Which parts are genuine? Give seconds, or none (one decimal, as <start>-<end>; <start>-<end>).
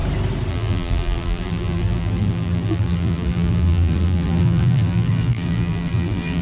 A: 0.0-0.5